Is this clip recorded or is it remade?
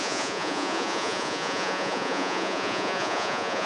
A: remade